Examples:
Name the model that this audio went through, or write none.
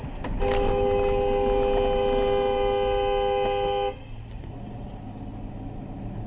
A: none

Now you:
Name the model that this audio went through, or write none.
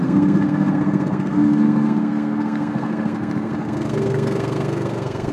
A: codec, SNAC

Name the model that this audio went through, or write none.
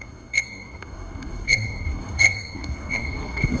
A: codec, SNAC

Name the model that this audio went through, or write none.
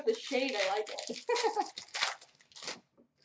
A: none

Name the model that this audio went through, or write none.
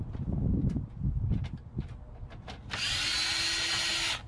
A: none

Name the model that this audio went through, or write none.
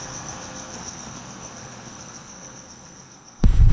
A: codec, SNAC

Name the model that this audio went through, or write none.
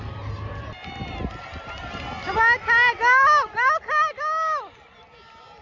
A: none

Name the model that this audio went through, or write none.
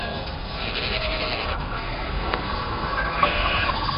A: codec, SNAC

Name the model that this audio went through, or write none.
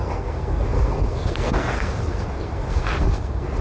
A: codec, SNAC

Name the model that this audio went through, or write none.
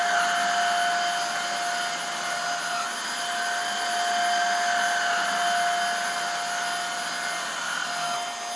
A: none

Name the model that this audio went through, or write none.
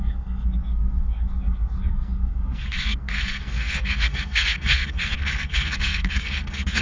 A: codec, SNAC